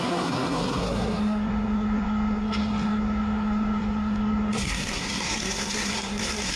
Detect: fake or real fake